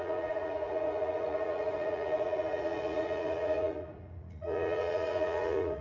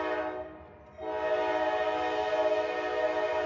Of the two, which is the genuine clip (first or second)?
second